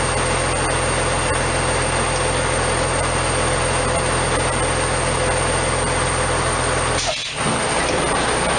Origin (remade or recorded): recorded